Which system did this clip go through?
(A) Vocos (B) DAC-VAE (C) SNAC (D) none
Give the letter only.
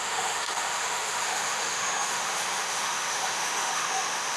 B